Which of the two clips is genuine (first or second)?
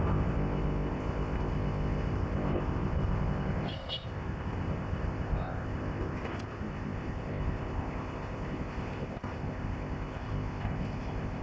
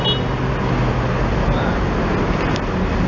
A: second